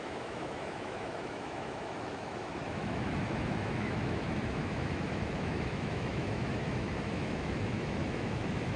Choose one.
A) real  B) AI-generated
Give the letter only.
B